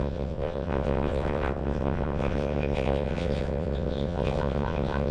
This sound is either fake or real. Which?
fake